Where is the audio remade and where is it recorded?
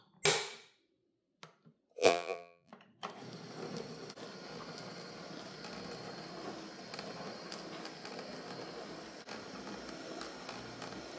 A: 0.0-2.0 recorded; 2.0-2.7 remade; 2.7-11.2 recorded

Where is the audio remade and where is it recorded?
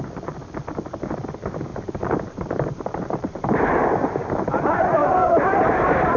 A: 0.0-1.7 recorded; 1.7-3.7 remade; 3.7-5.0 recorded; 5.0-5.8 remade; 5.8-6.2 recorded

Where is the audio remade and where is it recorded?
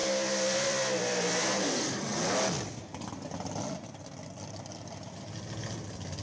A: 0.0-2.1 remade; 2.1-5.6 recorded; 5.6-6.2 remade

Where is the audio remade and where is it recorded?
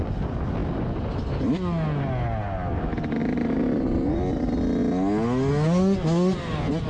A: 0.0-3.2 recorded; 3.2-4.2 remade; 4.2-6.9 recorded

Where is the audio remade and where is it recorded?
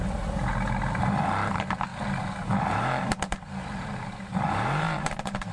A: 0.0-1.9 recorded; 1.9-5.5 remade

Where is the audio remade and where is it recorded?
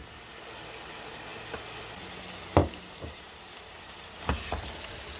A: 0.0-2.6 recorded; 2.6-4.2 remade; 4.2-5.2 recorded